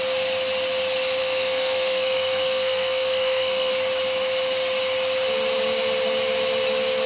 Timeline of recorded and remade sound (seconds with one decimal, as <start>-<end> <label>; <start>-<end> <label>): 0.0-1.2 recorded; 1.2-3.7 remade; 3.7-7.1 recorded